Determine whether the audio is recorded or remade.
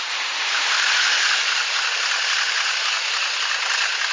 recorded